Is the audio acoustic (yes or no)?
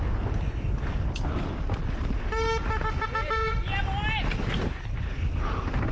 yes